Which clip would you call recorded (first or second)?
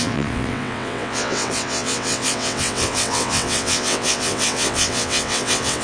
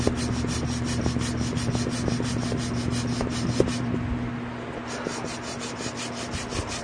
second